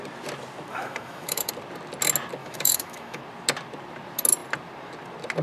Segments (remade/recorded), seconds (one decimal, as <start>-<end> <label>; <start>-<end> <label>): 0.0-0.7 recorded; 0.7-1.5 remade; 1.5-2.4 recorded; 2.4-3.2 remade; 3.2-5.4 recorded

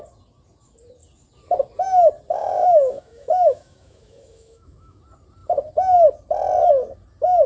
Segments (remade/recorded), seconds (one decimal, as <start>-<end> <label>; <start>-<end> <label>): 0.0-2.4 recorded; 2.4-5.0 remade; 5.0-7.5 recorded

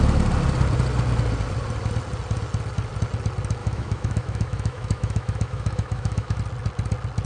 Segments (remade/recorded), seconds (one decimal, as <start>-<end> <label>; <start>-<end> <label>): 0.0-3.6 recorded; 3.6-6.4 remade; 6.4-7.3 recorded

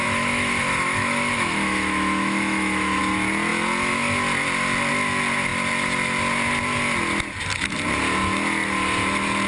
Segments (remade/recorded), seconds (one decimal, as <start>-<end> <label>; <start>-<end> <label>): 0.0-3.0 remade; 3.0-9.5 recorded